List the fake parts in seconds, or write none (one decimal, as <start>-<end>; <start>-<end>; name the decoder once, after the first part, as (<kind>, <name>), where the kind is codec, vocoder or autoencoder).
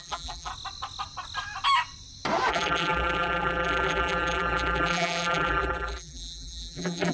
0.0-0.5 (vocoder, BigVGAN v2); 2.5-7.1